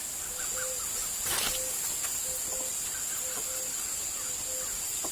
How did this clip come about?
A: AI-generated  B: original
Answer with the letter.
B